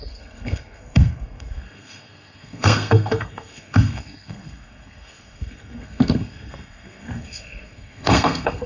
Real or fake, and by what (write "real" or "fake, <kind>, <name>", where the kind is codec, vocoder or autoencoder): fake, codec, SNAC